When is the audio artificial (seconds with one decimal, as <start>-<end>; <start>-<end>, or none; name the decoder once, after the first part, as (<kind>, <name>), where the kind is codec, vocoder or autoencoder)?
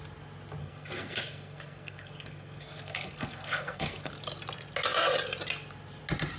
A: 0.6-4.1 (codec, SNAC)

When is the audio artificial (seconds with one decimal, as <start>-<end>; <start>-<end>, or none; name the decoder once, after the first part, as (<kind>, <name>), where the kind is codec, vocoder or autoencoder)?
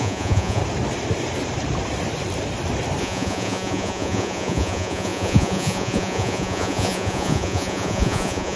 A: 0.0-0.6 (vocoder, Vocos); 3.0-8.6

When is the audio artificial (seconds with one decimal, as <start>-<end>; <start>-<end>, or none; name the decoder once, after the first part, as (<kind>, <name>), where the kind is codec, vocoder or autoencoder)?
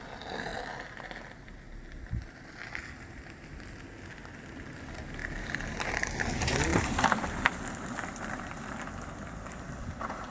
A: 6.7-9.8 (vocoder, BigVGAN v2)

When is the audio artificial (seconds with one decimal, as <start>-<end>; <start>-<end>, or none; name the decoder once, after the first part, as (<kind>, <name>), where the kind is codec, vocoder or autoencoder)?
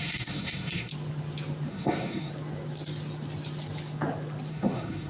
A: 0.0-0.9 (codec, SNAC); 1.7-2.3; 4.5-5.1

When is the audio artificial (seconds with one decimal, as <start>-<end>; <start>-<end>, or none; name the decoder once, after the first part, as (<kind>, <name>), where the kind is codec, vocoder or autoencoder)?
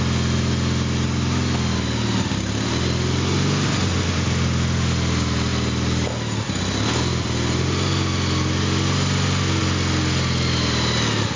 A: none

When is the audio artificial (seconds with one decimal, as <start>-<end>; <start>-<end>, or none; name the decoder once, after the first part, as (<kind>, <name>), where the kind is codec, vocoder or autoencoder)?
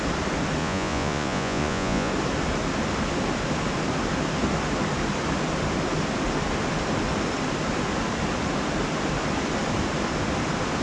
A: 0.6-2.1 (vocoder, Vocos)